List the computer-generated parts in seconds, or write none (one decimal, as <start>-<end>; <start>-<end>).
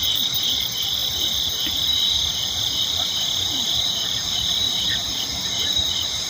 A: 0.0-6.3